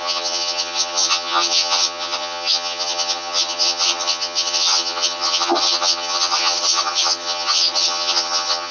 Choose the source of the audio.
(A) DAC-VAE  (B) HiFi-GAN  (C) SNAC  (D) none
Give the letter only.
B